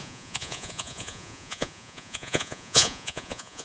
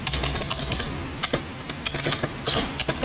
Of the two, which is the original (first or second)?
second